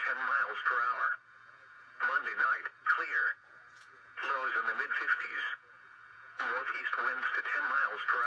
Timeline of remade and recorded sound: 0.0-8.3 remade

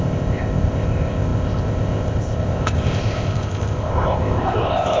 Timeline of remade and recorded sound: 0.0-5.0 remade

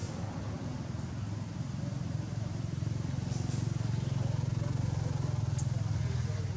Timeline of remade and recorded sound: 0.0-6.6 recorded

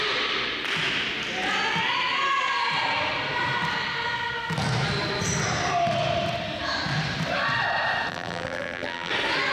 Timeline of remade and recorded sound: 0.0-8.1 recorded; 8.1-9.1 remade; 9.1-9.5 recorded

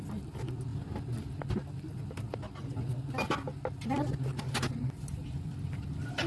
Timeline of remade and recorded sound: 0.0-6.3 recorded

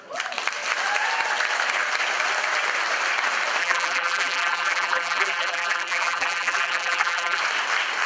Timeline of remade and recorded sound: 0.0-3.6 recorded; 3.6-7.4 remade; 7.4-8.1 recorded

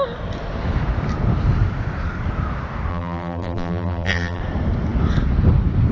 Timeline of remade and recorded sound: 0.0-2.9 recorded; 2.9-4.4 remade; 4.4-5.9 recorded